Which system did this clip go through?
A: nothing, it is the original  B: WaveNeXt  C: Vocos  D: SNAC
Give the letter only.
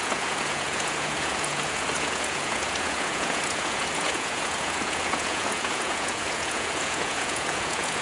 C